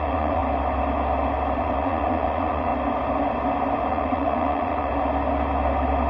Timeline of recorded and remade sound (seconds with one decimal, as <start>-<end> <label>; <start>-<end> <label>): 0.0-0.4 remade; 0.4-1.6 recorded; 1.6-2.7 remade; 2.7-3.9 recorded; 3.9-4.9 remade; 4.9-6.1 recorded